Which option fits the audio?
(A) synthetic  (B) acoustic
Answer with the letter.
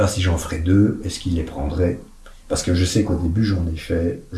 B